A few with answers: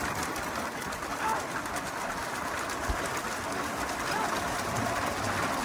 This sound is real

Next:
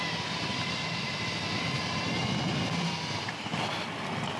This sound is real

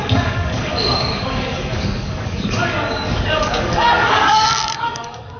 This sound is fake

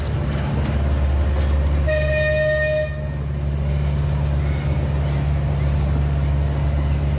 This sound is real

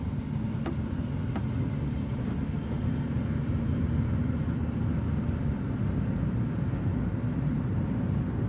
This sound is real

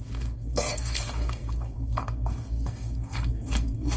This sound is fake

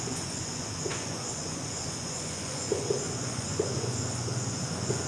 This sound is fake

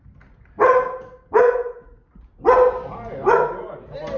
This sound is real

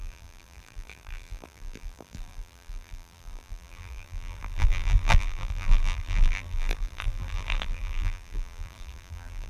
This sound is fake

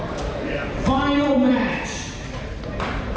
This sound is fake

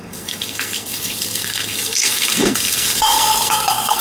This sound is fake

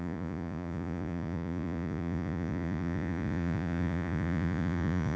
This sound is fake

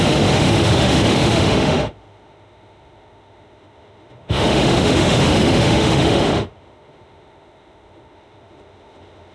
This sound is fake